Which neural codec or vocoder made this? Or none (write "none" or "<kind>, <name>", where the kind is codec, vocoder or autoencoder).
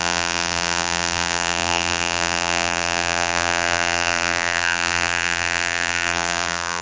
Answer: vocoder, BigVGAN v2